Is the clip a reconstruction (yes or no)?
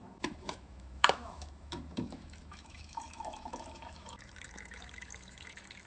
yes